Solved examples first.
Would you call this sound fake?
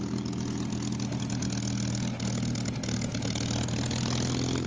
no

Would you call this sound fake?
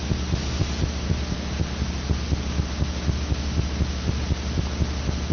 no